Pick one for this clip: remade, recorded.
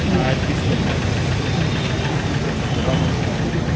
recorded